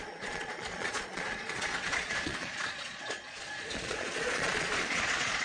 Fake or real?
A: fake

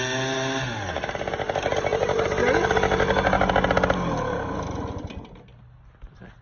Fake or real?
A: real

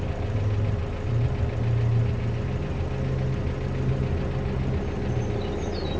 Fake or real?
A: real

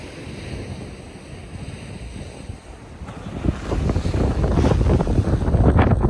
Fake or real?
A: real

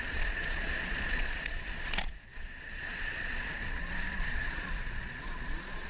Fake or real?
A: fake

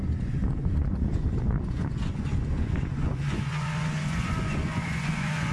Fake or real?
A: fake